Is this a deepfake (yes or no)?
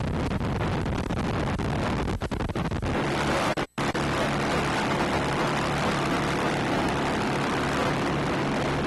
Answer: no